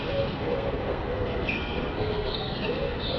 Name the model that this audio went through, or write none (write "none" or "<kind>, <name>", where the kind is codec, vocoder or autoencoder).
codec, SNAC